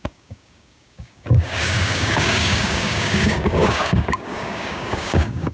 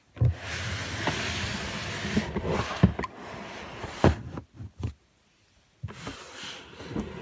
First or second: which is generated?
first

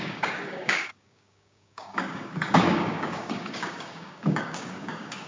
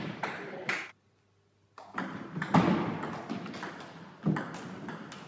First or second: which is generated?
first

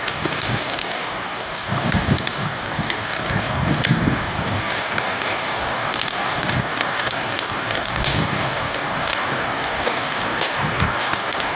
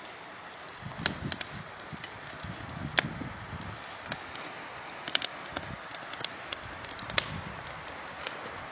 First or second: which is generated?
first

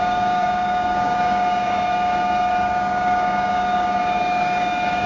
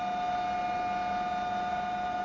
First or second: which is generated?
first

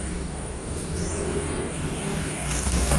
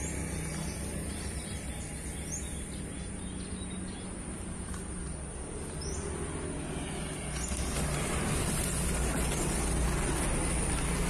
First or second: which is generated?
first